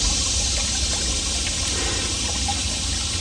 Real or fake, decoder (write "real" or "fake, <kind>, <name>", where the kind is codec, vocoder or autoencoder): real